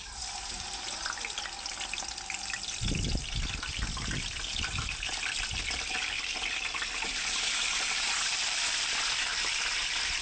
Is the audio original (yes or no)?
yes